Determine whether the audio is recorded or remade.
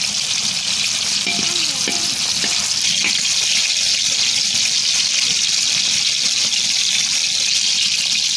recorded